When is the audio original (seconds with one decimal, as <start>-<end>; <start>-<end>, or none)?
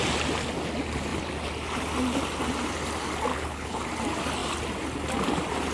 0.0-3.3; 3.8-5.7